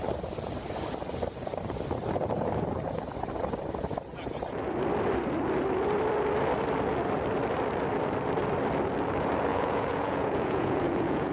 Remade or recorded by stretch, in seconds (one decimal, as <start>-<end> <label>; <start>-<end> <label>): 0.0-9.5 recorded; 9.5-11.3 remade